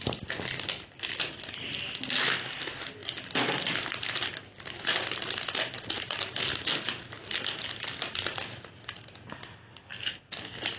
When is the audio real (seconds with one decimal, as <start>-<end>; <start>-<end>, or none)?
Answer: 0.0-10.8